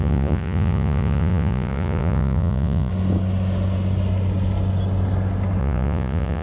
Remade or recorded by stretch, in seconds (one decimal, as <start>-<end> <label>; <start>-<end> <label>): 0.0-2.9 remade; 2.9-5.6 recorded; 5.6-6.4 remade